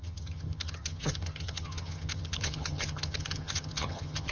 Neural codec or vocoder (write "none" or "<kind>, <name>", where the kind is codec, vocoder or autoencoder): vocoder, HiFi-GAN